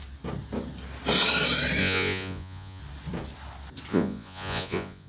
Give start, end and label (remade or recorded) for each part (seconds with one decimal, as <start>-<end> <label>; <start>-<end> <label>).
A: 0.0-1.8 recorded; 1.8-2.8 remade; 2.8-3.9 recorded; 3.9-5.1 remade